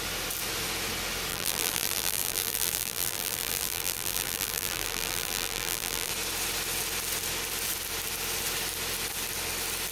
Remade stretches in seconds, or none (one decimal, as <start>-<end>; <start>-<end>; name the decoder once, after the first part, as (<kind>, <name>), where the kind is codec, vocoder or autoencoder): 1.3-6.1 (vocoder, BigVGAN v2)